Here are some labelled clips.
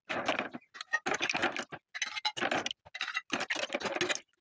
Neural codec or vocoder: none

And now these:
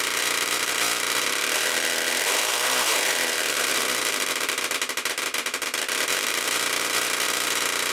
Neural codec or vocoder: vocoder, BigVGAN v2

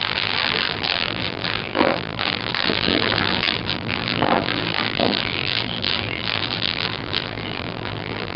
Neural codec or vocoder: vocoder, BigVGAN v2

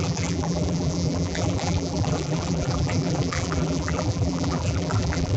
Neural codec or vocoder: vocoder, BigVGAN v2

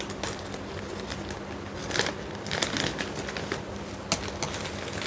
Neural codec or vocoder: none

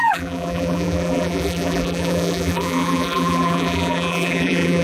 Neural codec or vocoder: vocoder, BigVGAN v2